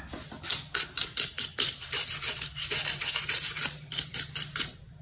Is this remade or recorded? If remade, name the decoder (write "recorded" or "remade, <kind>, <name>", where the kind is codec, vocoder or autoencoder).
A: recorded